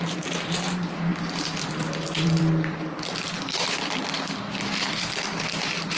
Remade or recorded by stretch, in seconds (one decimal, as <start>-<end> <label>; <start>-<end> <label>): 0.0-1.1 recorded; 1.1-2.4 remade; 2.4-2.9 recorded; 2.9-4.0 remade; 4.0-6.0 recorded